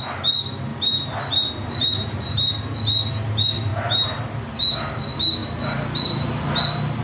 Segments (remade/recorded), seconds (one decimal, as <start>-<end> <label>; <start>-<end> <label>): 0.0-0.7 recorded; 0.7-1.2 remade; 1.2-1.8 recorded; 1.8-2.5 remade; 2.5-3.7 recorded; 3.7-4.2 remade; 4.2-5.4 recorded; 5.4-6.3 remade; 6.3-7.0 recorded